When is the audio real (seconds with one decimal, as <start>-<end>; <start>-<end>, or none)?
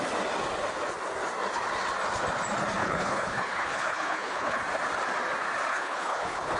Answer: 0.0-2.8; 4.6-5.7